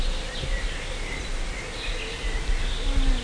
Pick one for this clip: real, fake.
real